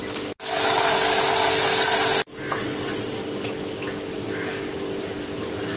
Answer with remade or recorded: recorded